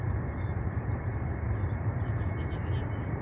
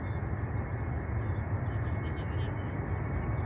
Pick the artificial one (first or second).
first